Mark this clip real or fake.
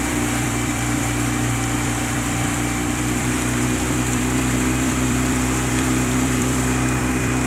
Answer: fake